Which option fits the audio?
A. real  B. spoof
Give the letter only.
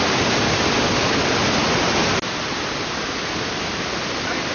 A